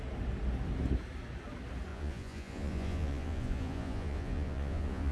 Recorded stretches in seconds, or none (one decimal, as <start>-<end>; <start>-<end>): 0.0-1.9